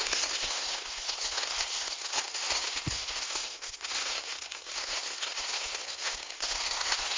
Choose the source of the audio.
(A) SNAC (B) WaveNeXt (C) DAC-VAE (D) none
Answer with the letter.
A